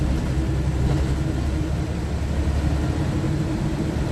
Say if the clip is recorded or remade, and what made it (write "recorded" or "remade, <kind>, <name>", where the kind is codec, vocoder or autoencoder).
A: recorded